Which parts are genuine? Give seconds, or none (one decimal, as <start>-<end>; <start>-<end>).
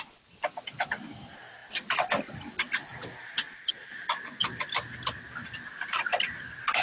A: 0.0-6.8